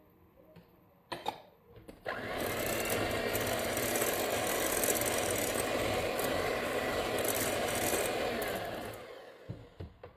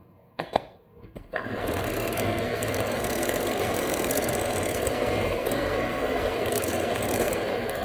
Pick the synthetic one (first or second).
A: second